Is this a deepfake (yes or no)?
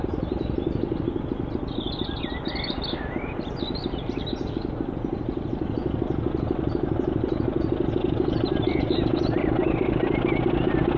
no